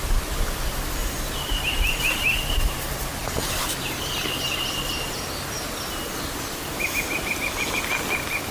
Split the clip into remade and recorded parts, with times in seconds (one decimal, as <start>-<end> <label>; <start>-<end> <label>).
0.0-1.0 recorded; 1.0-4.6 remade; 4.6-8.5 recorded